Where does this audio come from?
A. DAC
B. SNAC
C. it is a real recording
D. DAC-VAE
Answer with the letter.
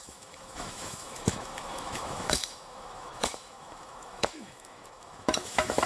D